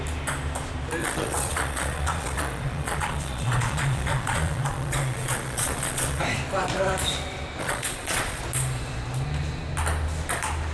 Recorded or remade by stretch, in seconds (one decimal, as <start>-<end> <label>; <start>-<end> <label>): 0.0-1.0 recorded; 1.0-6.2 remade; 6.2-7.6 recorded; 7.6-8.4 remade; 8.4-10.7 recorded